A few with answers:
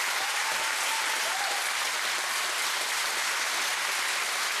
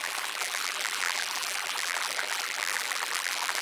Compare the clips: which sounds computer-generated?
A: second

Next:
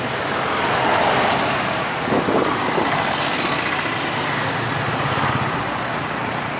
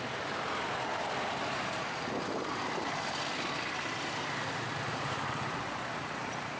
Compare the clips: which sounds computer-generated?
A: second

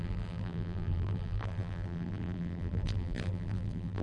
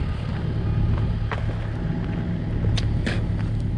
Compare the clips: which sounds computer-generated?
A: first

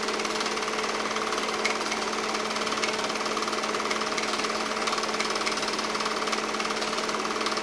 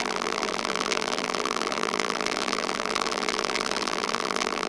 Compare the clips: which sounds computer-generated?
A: second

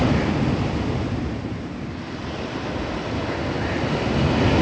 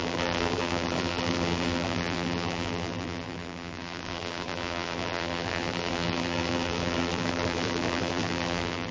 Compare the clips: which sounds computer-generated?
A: second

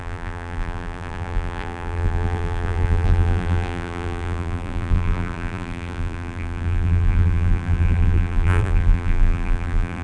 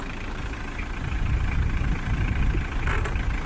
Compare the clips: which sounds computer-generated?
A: first